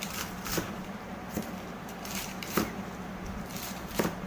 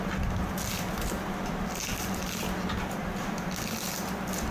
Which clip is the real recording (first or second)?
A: second